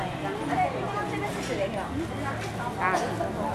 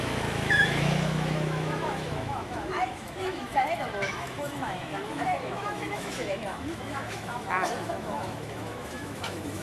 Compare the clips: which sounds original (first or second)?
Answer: first